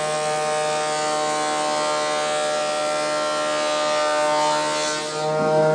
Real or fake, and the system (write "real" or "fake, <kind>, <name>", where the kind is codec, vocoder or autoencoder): real